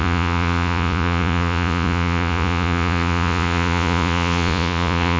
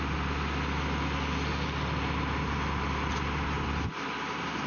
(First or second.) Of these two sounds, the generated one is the first